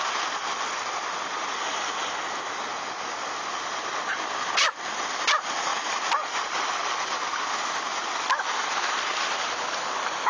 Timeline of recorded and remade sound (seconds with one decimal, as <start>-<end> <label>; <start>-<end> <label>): 0.0-5.7 recorded; 5.7-6.4 remade; 6.4-10.3 recorded